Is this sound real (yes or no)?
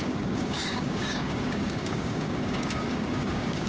no